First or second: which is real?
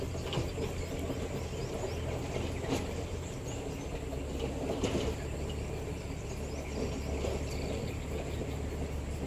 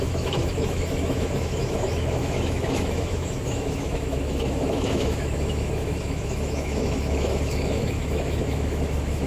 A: first